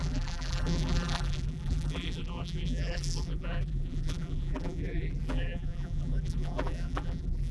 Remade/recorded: remade